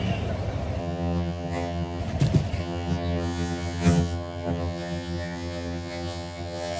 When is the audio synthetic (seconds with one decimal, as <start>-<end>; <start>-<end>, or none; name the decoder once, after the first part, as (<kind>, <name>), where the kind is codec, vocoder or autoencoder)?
0.8-2.0 (vocoder, HiFi-GAN); 2.6-6.8